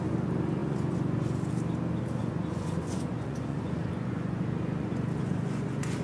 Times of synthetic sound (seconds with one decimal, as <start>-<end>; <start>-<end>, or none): 0.6-1.5; 2.2-6.0